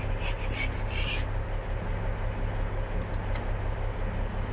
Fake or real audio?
real